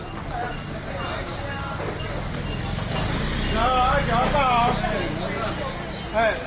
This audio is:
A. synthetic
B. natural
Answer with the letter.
B